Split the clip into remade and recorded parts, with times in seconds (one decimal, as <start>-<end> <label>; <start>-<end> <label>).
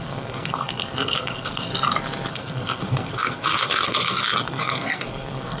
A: 0.0-1.7 remade; 1.7-2.3 recorded; 2.3-5.6 remade